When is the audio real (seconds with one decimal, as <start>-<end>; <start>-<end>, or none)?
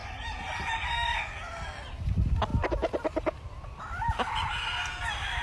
0.0-5.4